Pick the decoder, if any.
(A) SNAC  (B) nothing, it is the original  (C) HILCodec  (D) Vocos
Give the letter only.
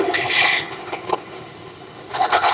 C